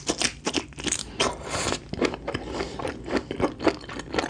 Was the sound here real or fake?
real